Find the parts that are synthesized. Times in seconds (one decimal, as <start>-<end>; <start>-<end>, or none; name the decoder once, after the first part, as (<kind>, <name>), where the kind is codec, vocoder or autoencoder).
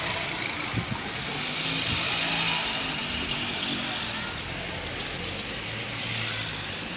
none